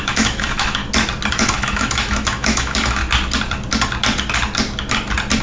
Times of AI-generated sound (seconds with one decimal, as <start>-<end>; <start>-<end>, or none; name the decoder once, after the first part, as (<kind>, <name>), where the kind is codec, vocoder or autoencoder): 0.0-0.8 (autoencoder, DAC-VAE); 1.3-3.0